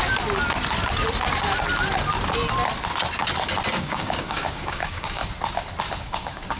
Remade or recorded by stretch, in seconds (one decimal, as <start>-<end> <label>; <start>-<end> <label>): 0.0-3.7 recorded; 3.7-5.2 remade; 5.2-6.0 recorded; 6.0-6.6 remade